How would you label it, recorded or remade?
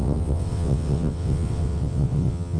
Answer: remade